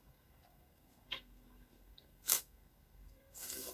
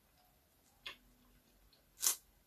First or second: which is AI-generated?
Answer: first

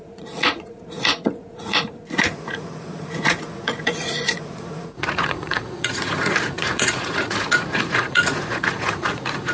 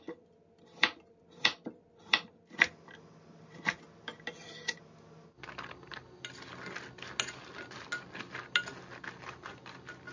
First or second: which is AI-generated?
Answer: first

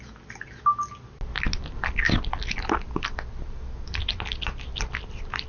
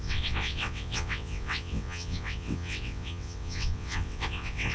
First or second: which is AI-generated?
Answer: second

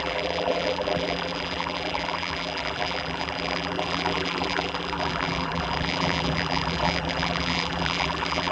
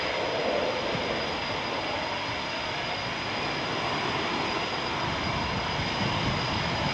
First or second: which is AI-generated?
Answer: first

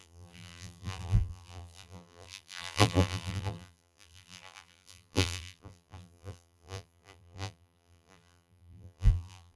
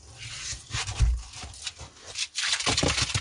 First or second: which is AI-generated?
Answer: first